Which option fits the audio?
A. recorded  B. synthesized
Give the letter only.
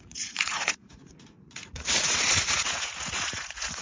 B